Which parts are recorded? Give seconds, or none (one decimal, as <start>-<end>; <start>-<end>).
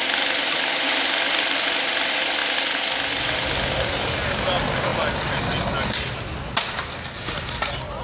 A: 0.0-8.0